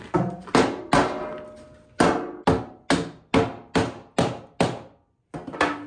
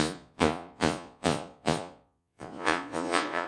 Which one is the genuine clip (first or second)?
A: first